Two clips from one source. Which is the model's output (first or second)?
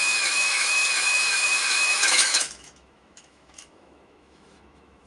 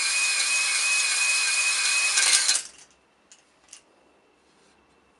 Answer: first